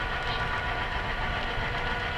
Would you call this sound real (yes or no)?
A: yes